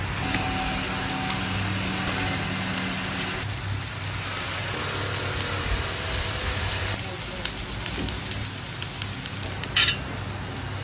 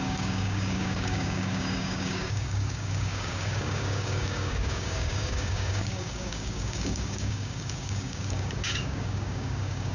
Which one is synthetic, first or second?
second